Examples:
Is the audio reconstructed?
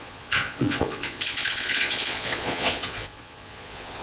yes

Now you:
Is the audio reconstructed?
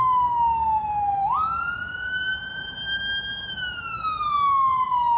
no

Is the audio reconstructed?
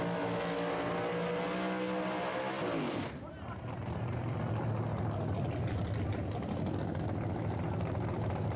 no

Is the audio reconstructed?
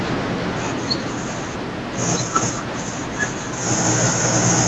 no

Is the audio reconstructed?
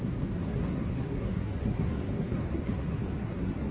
yes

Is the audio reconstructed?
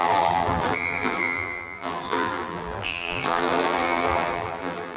yes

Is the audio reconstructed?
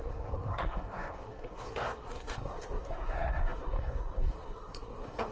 yes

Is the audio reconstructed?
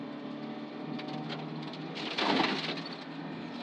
no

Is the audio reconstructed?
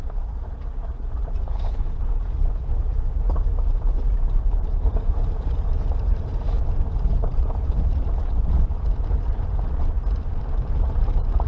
yes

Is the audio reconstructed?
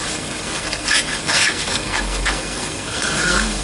yes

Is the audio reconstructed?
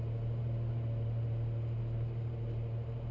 no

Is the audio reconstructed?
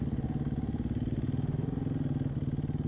no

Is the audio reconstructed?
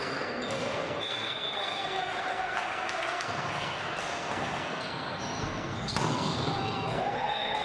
yes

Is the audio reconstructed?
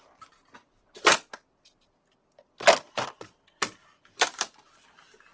yes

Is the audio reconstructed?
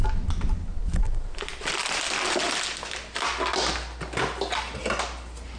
no